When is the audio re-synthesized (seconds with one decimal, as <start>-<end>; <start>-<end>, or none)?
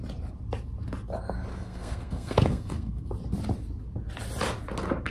1.5-3.1